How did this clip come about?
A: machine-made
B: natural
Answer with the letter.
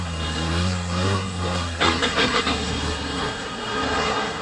A